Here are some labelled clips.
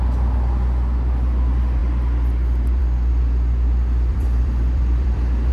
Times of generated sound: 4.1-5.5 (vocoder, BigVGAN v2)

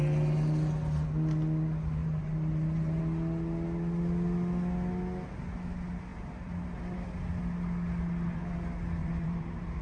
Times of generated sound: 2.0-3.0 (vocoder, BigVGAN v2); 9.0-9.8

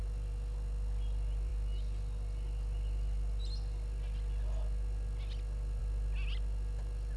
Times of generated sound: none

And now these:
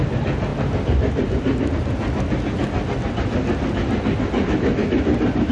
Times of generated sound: 0.5-1.7 (vocoder, BigVGAN v2)

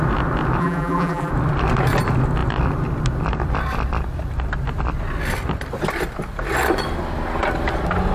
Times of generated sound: 0.6-1.3 (vocoder, BigVGAN v2)

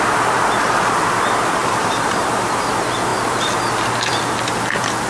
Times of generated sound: 1.6-2.7 (vocoder, BigVGAN v2)

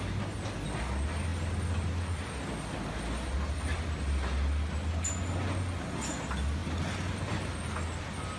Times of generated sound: none

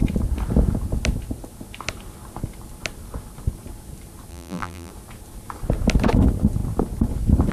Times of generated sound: 4.3-4.9 (vocoder, BigVGAN v2)